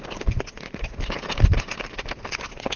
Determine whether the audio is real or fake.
real